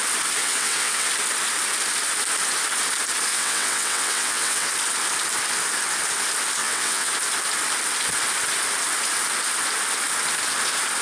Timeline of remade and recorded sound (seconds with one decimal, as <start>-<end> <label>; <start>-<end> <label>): 0.0-0.4 recorded; 0.4-1.1 remade; 1.1-3.3 recorded; 3.3-4.7 remade; 4.7-6.6 recorded; 6.6-7.1 remade; 7.1-11.0 recorded